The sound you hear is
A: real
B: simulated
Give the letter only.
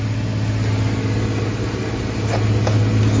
A